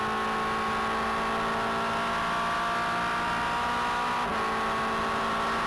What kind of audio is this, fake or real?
real